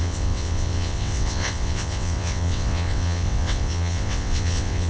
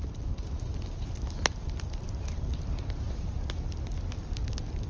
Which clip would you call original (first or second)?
second